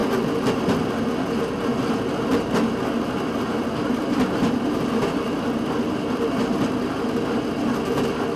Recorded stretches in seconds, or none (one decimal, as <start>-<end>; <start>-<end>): 0.0-8.4